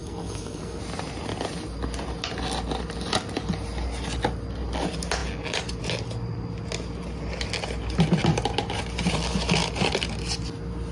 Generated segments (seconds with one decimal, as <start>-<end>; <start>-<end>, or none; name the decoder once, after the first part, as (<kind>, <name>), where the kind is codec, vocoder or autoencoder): 0.0-0.8 (codec, SNAC)

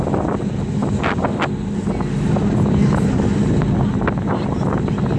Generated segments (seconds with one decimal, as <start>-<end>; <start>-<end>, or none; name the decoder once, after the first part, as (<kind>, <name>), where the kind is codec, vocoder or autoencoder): none

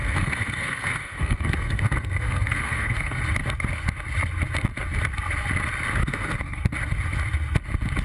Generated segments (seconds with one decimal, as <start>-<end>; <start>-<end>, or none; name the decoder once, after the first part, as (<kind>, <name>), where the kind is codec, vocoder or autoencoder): 0.0-3.2 (codec, SNAC); 6.0-6.6

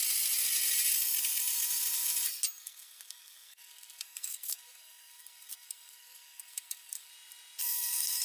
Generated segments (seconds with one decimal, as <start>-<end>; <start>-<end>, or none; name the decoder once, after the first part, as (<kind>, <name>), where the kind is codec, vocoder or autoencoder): 2.5-7.1 (codec, SNAC); 7.6-8.2

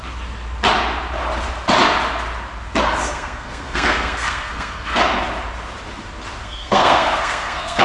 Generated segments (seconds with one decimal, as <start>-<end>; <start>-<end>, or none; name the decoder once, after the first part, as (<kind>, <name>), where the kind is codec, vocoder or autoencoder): 3.0-5.0 (codec, SNAC); 6.4-7.8

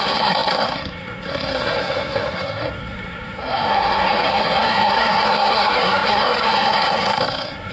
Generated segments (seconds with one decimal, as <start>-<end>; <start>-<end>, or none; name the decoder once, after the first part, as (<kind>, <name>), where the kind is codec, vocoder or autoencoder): 0.0-7.7 (codec, SNAC)